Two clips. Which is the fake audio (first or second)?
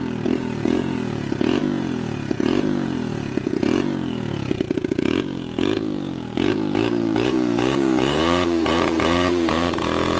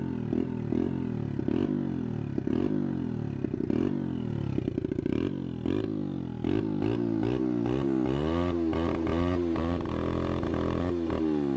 first